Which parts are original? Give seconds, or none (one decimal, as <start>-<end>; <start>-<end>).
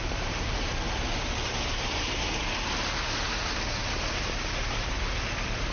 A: 2.4-3.8; 5.0-5.7